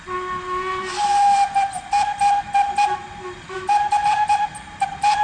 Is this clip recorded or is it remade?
recorded